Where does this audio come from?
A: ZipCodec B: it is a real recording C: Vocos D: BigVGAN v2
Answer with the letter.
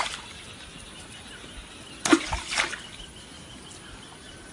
B